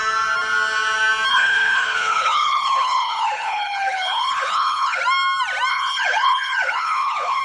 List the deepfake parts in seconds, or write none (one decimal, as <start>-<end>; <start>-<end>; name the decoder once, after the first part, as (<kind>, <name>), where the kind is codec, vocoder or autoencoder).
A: 1.3-5.0 (codec, HILCodec); 5.7-7.4